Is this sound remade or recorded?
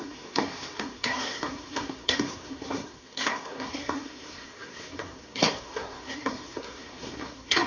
remade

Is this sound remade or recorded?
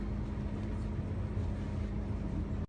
recorded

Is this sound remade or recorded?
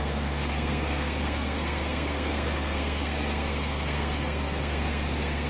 remade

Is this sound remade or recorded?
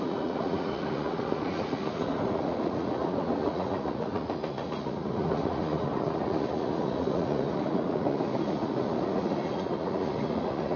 remade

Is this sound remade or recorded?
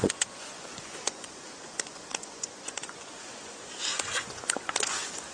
remade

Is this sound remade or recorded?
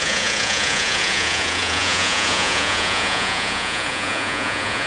remade